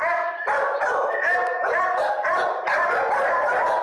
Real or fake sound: real